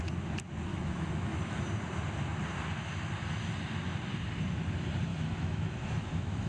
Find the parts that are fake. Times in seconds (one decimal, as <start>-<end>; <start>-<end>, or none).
0.7-1.6; 5.1-6.5